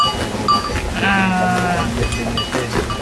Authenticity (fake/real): real